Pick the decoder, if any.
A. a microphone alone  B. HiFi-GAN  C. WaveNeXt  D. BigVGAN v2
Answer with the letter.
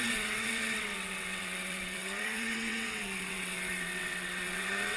C